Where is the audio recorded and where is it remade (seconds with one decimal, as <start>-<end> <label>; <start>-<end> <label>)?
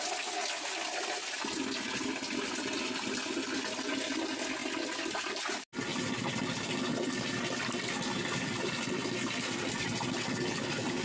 0.0-4.6 recorded; 4.6-5.4 remade; 5.4-11.0 recorded